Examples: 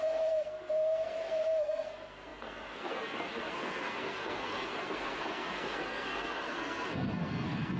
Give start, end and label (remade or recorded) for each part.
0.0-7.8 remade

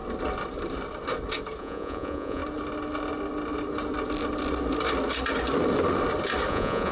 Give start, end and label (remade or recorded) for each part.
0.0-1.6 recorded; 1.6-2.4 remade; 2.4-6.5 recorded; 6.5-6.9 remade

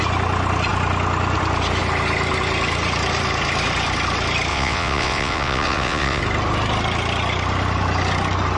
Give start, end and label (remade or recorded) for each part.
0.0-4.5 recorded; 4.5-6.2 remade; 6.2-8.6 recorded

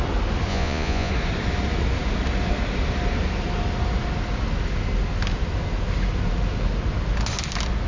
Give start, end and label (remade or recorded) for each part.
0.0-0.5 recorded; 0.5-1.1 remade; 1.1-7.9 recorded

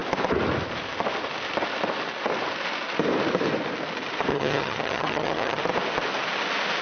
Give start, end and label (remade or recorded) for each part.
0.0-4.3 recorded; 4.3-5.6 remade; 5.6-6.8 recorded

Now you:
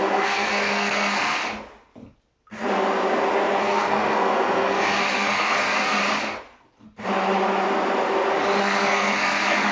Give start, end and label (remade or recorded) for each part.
0.0-1.4 remade; 1.4-3.6 recorded; 3.6-6.0 remade; 6.0-8.6 recorded; 8.6-9.7 remade

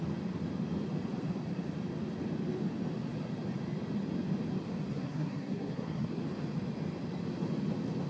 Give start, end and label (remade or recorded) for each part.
0.0-4.9 recorded; 4.9-6.2 remade; 6.2-8.1 recorded

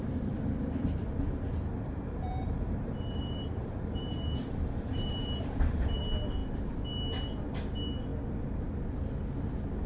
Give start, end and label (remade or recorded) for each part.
0.0-1.7 recorded; 1.7-6.0 remade; 6.0-9.9 recorded